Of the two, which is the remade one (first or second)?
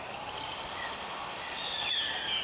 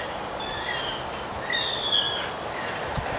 first